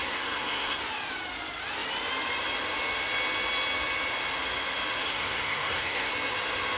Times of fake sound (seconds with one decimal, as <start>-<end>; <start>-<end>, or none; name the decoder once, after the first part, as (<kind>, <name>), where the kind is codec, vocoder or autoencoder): 0.0-0.8 (codec, SNAC); 5.0-6.1